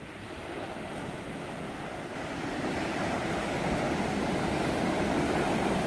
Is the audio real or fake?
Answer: real